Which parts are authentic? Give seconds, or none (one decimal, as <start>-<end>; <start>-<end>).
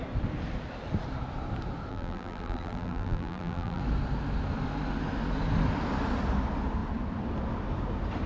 0.0-1.9; 3.8-8.3